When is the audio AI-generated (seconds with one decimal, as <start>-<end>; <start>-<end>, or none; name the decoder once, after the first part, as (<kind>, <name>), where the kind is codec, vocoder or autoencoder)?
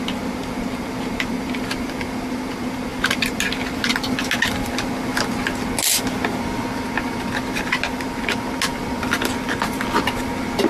none